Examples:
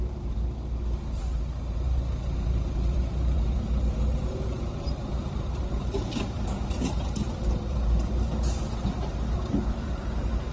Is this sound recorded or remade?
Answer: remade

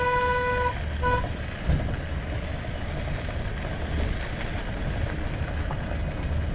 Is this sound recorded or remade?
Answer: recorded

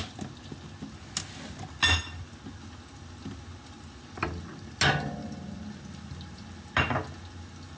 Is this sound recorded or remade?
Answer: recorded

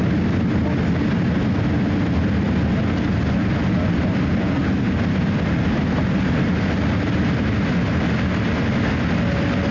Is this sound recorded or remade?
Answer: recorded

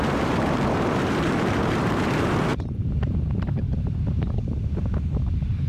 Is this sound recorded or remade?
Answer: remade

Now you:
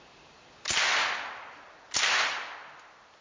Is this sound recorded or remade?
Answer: recorded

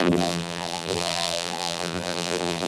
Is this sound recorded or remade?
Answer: remade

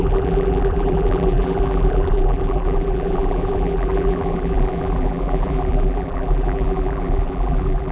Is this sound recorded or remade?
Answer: remade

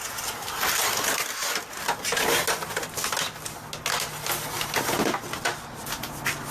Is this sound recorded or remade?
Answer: recorded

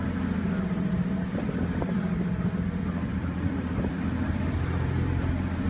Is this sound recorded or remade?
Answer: recorded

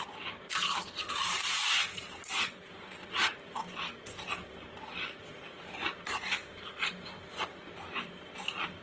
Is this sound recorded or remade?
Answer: remade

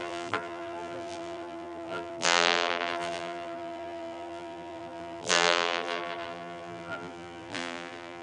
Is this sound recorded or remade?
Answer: remade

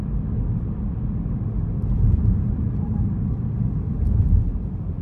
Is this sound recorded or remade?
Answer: recorded